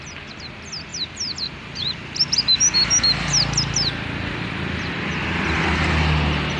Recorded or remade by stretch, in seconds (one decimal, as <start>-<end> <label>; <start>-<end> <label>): 0.0-6.6 recorded